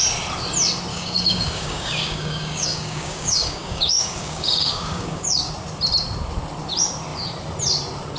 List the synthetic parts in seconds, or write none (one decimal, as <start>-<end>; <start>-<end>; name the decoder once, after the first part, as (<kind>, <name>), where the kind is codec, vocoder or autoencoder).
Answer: 0.9-5.5 (codec, DAC)